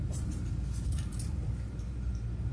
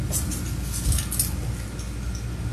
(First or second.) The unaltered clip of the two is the second